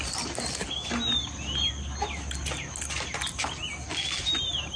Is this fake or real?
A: real